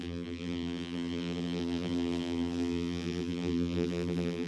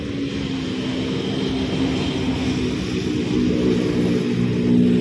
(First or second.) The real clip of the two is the second